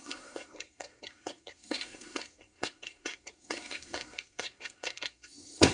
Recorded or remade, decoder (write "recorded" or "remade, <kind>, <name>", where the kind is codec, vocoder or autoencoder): remade, codec, SNAC